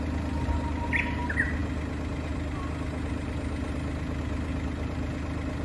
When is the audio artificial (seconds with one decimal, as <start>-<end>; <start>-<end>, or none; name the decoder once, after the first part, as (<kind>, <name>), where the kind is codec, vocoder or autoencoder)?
none